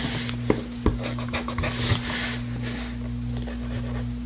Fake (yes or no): no